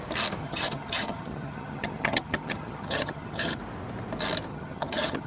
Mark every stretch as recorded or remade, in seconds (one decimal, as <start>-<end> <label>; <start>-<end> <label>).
0.0-0.4 recorded; 0.4-3.6 remade; 3.6-4.5 recorded; 4.5-5.3 remade